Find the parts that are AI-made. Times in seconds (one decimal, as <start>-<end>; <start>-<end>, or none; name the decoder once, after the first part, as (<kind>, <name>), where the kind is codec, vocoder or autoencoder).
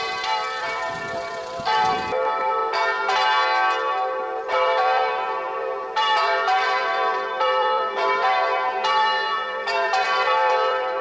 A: 0.0-2.6 (vocoder, BigVGAN v2); 4.4-11.0